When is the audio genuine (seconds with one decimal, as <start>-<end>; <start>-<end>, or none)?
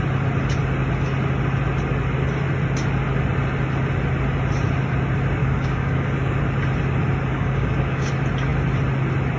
0.0-5.4; 6.4-7.3; 8.1-9.4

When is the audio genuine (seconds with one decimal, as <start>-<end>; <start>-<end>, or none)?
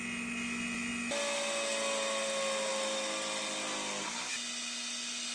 0.0-5.3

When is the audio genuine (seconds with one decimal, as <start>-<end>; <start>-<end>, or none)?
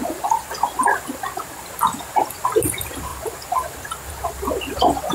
0.0-5.1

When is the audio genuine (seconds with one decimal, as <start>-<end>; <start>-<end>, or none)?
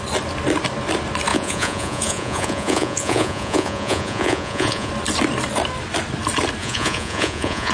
0.0-1.3; 4.9-6.6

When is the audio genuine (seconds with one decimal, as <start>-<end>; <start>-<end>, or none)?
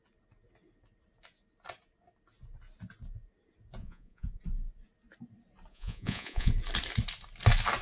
0.0-3.8; 4.4-5.7; 6.5-7.8